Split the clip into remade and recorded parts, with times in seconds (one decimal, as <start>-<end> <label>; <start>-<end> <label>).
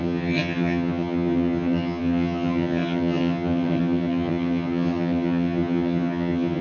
0.0-6.6 remade